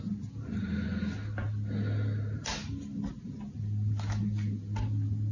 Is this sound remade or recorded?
recorded